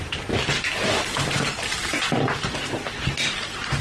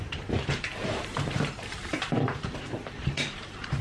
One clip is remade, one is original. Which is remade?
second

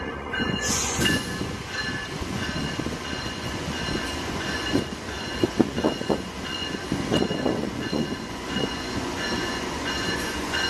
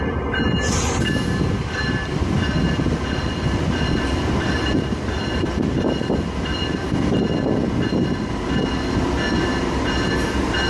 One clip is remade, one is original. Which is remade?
first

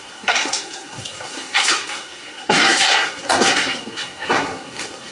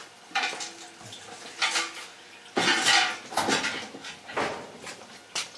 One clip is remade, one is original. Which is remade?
first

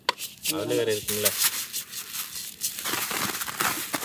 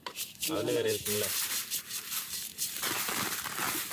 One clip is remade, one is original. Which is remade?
second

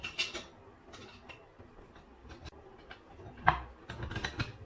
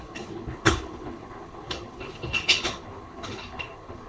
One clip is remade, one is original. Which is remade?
second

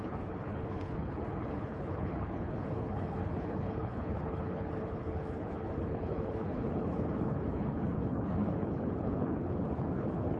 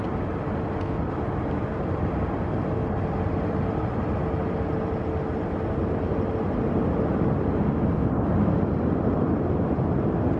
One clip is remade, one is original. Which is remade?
first